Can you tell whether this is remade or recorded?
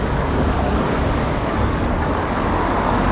remade